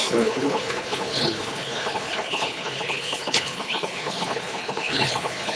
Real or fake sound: fake